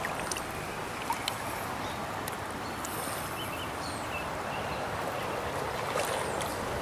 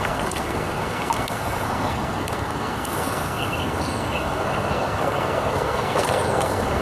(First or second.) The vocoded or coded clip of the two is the second